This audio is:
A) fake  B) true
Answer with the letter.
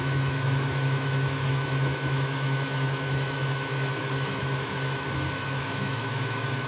A